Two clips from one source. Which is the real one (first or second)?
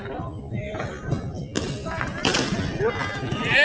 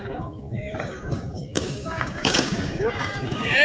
first